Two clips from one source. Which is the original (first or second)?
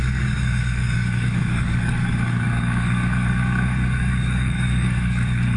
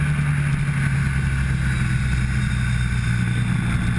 second